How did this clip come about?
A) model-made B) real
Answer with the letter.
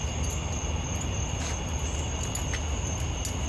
B